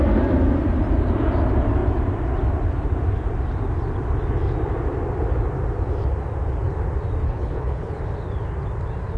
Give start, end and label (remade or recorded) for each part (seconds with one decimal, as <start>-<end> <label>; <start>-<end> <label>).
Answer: 0.0-7.2 recorded; 7.2-8.0 remade; 8.0-9.2 recorded